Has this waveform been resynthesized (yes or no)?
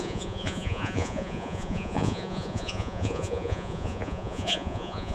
yes